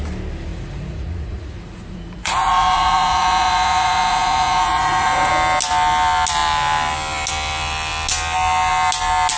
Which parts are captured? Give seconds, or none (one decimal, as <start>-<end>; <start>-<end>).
0.0-0.5; 5.3-9.4